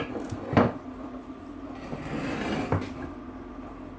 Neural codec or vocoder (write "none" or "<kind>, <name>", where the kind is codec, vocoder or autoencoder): none